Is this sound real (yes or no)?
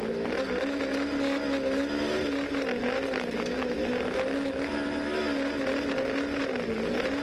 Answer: yes